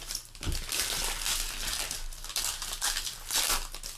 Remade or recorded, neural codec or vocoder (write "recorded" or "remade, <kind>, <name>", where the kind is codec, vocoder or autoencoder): recorded